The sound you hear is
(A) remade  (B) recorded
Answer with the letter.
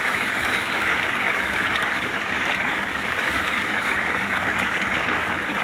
A